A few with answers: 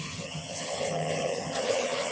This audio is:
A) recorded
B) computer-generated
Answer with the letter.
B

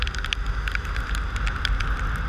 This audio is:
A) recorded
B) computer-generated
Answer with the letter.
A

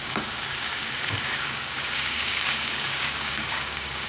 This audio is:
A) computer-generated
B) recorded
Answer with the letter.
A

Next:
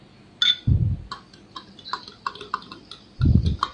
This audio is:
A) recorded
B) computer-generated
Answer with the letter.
A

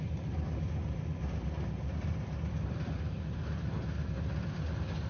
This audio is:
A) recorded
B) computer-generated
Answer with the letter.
A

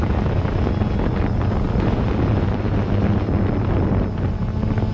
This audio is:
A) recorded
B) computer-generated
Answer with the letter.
A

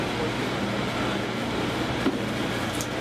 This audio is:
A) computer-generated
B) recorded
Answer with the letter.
B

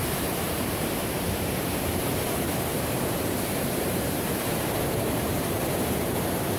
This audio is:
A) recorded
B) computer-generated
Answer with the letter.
B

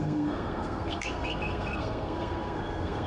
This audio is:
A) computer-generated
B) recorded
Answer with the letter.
A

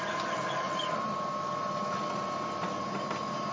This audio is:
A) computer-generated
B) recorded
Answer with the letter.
B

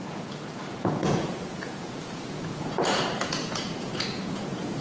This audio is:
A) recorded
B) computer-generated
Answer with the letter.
B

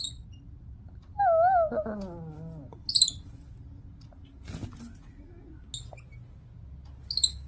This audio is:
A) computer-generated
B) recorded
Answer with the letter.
B